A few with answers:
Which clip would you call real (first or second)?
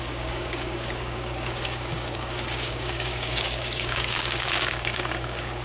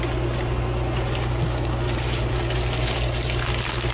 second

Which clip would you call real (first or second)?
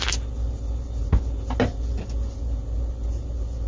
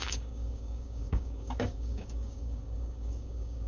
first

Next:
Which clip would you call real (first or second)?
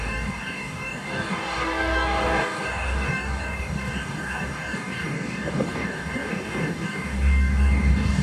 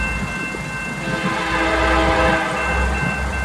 second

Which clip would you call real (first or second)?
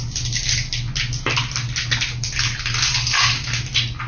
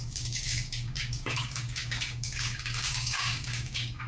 first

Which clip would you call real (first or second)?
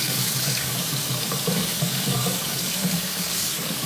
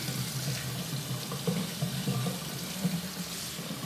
second